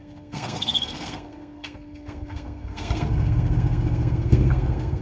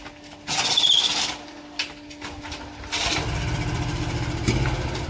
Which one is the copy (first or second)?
first